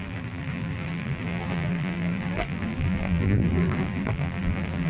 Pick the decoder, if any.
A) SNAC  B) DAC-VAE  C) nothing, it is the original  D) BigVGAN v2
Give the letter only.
D